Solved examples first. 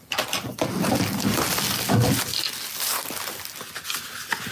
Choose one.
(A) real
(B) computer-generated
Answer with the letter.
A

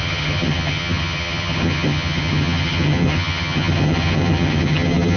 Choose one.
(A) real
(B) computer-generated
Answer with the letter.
B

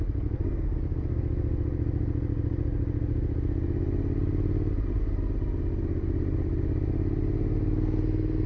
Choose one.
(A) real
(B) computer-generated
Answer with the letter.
A